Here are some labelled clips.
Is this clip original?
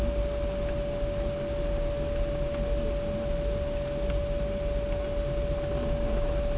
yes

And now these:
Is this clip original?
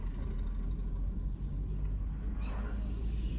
yes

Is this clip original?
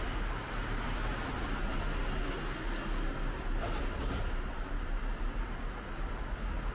yes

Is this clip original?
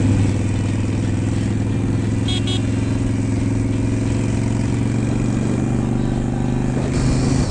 yes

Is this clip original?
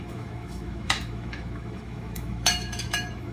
no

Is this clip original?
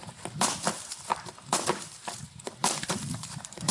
no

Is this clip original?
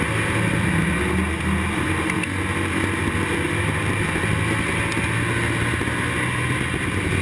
yes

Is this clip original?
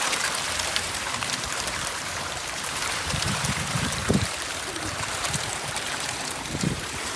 no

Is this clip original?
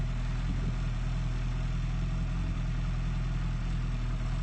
yes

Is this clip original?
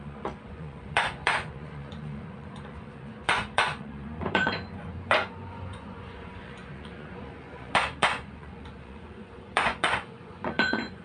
no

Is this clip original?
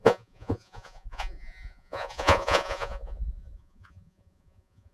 no